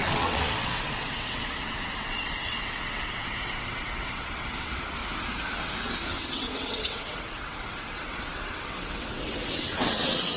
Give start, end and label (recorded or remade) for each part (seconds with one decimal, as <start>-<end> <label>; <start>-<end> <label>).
0.0-5.0 remade; 5.0-6.2 recorded; 6.2-10.4 remade